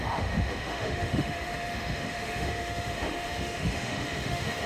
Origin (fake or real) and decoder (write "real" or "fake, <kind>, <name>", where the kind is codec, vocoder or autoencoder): fake, autoencoder, DAC-VAE